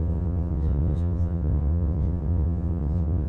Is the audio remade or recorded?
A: remade